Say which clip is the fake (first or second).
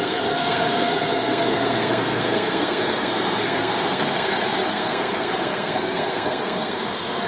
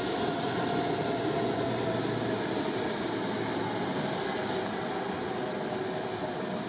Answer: first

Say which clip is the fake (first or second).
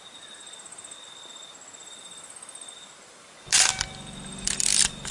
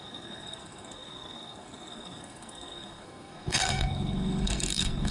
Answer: second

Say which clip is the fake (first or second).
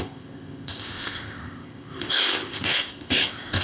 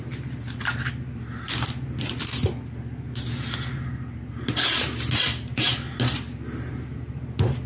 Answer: first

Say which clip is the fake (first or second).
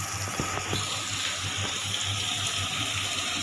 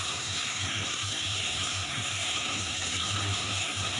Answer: second